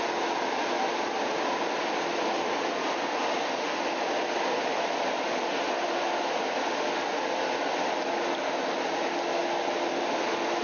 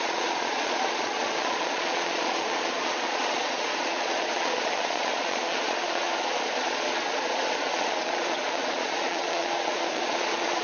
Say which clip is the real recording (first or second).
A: first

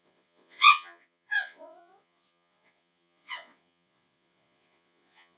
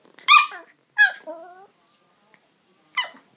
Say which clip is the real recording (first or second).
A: second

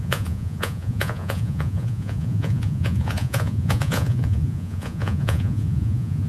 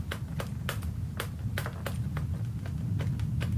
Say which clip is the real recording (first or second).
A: second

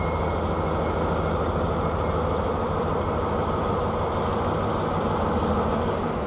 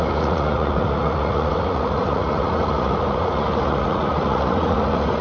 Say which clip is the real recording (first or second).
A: first